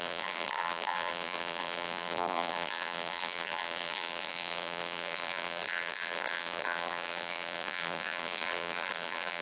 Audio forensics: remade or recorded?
remade